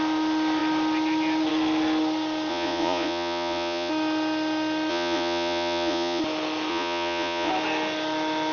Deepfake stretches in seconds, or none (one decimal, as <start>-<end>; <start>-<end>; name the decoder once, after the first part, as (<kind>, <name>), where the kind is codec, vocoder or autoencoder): 2.5-3.9 (vocoder, Vocos); 4.9-6.2; 6.7-7.5